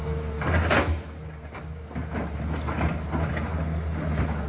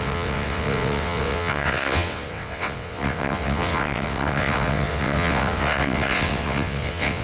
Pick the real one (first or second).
first